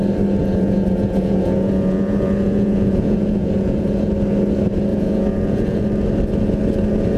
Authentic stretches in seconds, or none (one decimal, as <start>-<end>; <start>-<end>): 0.0-0.4; 4.1-4.9; 5.8-7.2